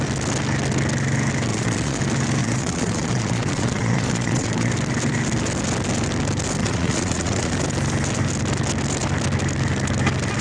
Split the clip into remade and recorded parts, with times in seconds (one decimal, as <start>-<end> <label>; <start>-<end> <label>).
0.0-1.5 recorded; 1.5-2.0 remade; 2.0-2.4 recorded; 2.4-4.7 remade; 4.7-6.6 recorded; 6.6-7.5 remade; 7.5-10.4 recorded